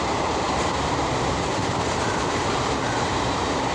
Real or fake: fake